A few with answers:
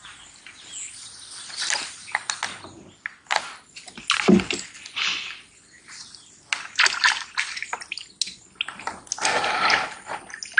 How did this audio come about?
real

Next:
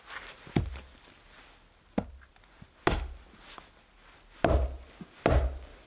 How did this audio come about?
real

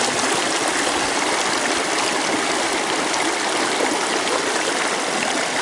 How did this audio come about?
real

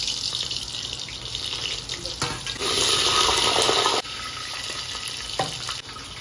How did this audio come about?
real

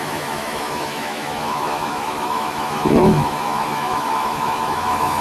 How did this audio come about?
fake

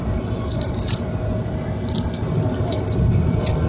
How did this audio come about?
real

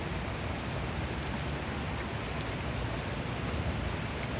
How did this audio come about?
real